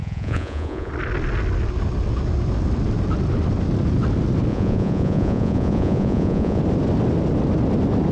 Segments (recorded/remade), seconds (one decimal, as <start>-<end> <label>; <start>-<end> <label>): 0.0-0.9 remade; 0.9-4.5 recorded; 4.5-6.6 remade; 6.6-8.1 recorded